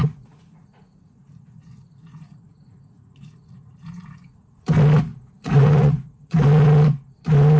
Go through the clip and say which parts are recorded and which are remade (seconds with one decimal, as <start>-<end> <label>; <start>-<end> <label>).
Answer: 0.0-4.6 remade; 4.6-5.1 recorded; 5.1-6.4 remade; 6.4-7.6 recorded